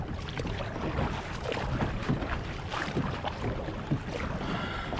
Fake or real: real